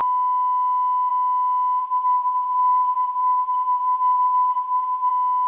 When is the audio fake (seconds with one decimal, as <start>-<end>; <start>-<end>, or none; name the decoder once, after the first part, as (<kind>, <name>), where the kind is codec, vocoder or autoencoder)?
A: 1.8-5.1 (vocoder, BigVGAN v2)